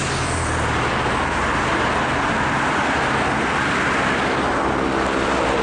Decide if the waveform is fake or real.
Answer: real